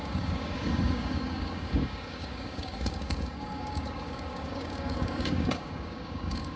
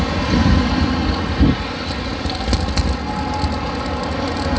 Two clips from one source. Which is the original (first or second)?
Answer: second